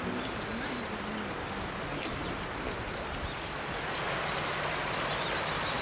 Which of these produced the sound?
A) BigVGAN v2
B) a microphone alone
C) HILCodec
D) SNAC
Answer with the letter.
B